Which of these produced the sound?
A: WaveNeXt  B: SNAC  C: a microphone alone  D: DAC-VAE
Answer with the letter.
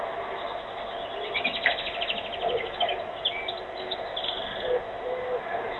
C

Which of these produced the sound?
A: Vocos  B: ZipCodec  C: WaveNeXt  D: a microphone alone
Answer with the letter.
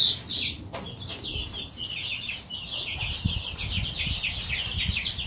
D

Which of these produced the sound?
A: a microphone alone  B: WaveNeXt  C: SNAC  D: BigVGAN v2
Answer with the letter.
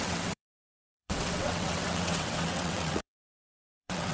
B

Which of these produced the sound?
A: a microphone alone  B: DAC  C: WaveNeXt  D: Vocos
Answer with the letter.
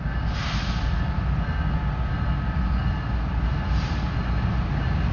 A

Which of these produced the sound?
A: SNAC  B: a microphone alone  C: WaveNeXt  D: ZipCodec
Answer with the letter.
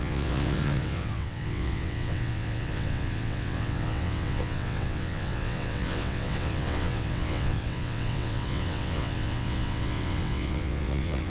C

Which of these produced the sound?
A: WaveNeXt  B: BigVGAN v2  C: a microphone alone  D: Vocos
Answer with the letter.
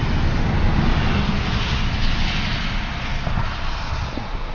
C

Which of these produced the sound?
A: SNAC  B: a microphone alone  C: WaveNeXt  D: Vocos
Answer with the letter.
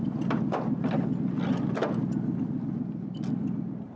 B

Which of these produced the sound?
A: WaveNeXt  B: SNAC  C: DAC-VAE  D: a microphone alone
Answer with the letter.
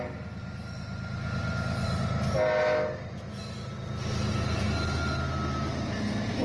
D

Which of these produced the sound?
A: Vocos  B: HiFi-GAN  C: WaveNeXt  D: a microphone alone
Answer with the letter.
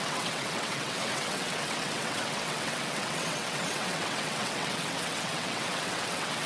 C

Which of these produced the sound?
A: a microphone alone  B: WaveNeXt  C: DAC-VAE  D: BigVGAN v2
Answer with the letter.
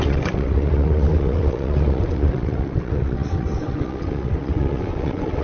B